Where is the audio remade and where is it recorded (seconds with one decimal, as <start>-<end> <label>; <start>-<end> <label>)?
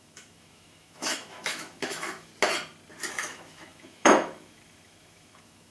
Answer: 0.0-2.3 remade; 2.3-3.1 recorded; 3.1-5.7 remade